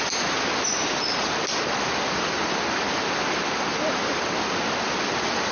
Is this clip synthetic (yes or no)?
no